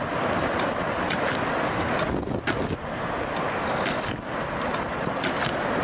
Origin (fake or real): real